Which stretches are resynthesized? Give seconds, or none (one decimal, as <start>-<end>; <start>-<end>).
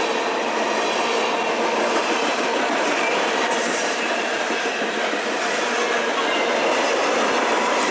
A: 2.0-5.1